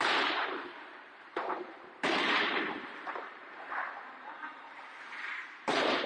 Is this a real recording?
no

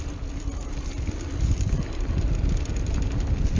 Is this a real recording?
yes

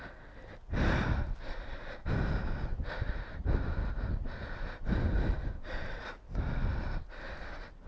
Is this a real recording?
yes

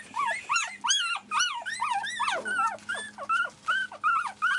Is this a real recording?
yes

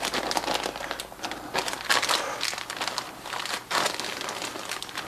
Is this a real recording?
yes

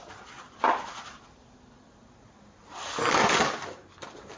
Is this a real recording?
yes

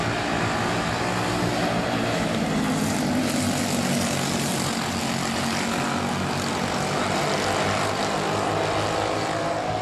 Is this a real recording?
yes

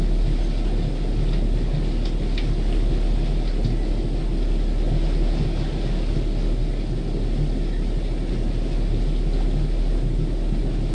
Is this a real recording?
yes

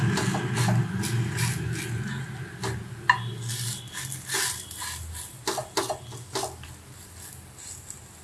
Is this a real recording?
yes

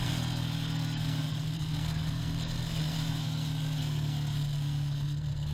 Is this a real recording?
no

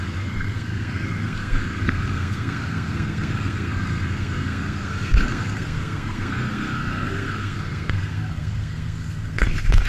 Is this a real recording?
no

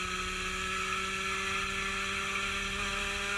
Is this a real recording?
yes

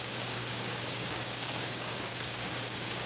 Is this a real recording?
no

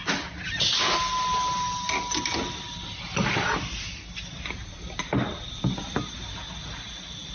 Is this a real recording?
yes